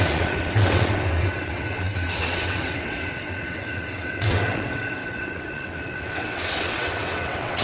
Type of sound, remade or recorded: remade